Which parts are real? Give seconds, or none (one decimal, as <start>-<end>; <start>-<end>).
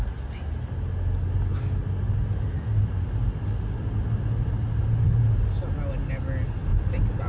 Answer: 0.0-7.3